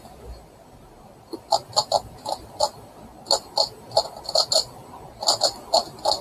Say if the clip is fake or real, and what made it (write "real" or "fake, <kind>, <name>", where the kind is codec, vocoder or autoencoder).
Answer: real